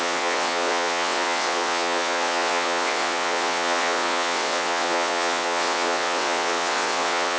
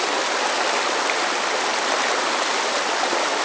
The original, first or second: second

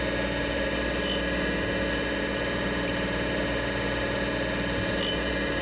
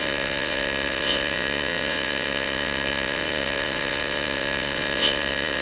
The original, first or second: first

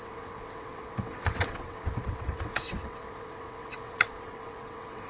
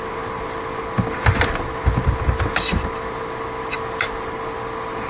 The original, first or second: second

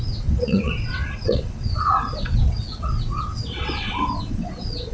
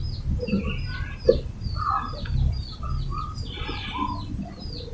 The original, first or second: second